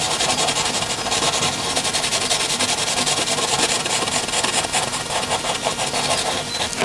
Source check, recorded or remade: recorded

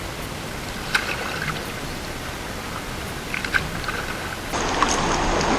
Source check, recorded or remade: recorded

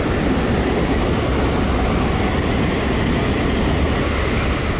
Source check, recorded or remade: recorded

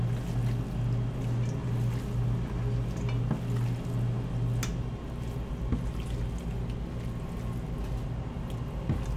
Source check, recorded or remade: recorded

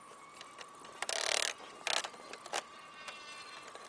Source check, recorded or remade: recorded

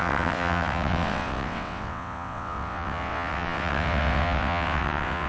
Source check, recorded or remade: remade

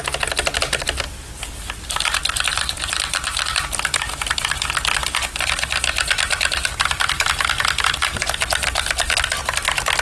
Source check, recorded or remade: recorded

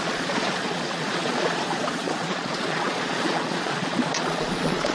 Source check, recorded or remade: remade